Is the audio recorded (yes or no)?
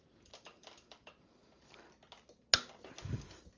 yes